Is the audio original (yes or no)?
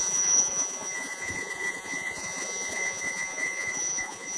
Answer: no